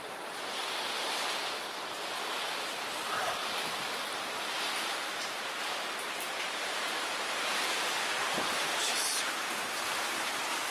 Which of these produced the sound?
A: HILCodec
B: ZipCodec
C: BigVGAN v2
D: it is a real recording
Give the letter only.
C